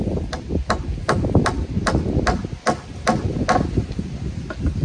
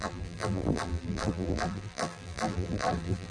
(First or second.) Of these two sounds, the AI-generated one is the second